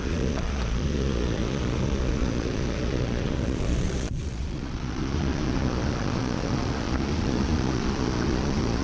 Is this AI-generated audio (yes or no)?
yes